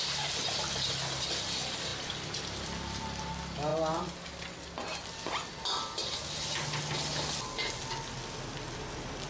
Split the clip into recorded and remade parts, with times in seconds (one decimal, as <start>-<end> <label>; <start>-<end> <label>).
0.0-1.9 recorded; 1.9-3.2 remade; 3.2-9.3 recorded